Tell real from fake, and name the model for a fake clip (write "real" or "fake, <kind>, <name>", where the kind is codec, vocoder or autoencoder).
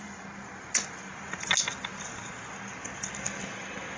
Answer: real